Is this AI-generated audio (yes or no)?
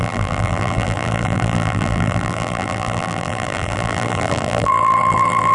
yes